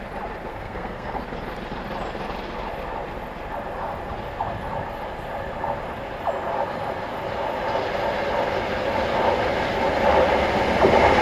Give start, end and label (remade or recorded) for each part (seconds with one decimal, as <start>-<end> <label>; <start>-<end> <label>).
0.0-0.5 recorded; 0.5-1.2 remade; 1.2-11.2 recorded